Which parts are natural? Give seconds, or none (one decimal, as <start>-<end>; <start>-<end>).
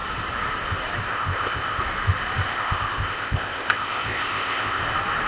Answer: 0.0-1.1; 1.8-2.5; 4.8-5.3